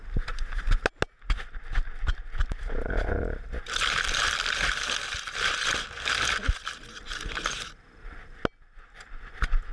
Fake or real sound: real